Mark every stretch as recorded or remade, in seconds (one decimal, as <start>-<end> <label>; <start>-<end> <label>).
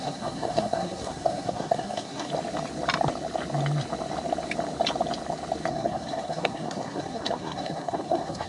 0.0-2.3 remade; 2.3-5.7 recorded; 5.7-8.5 remade